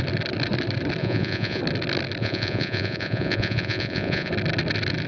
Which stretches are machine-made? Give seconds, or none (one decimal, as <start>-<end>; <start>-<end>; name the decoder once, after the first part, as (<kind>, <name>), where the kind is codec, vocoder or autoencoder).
1.0-1.6 (vocoder, Vocos); 2.2-4.3